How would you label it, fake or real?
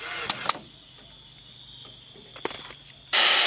real